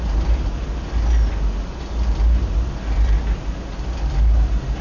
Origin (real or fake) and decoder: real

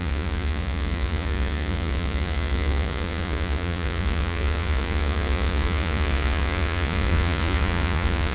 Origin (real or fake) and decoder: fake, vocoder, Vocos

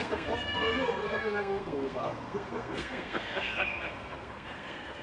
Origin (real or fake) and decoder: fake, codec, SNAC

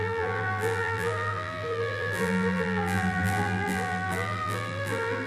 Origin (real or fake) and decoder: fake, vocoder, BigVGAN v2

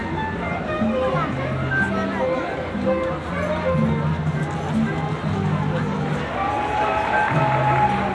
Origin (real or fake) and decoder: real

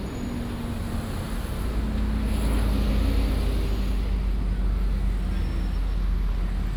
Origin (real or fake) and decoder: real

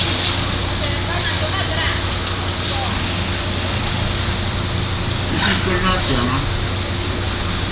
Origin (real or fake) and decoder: real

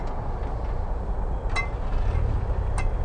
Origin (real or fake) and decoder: real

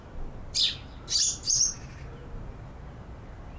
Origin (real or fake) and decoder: real